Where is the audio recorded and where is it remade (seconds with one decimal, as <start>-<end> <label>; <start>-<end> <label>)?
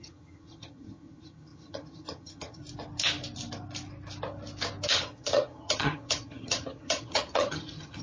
0.0-2.6 remade; 2.6-4.9 recorded; 4.9-8.0 remade